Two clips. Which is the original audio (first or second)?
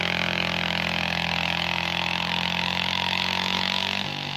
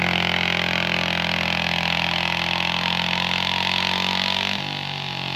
second